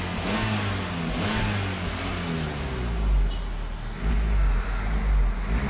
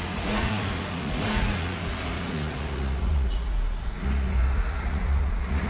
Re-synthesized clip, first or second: second